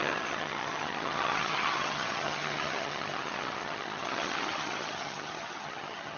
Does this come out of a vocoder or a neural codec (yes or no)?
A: yes